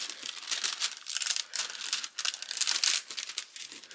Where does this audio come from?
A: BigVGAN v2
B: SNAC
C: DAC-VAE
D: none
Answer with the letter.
D